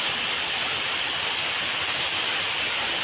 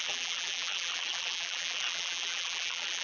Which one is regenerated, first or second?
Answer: second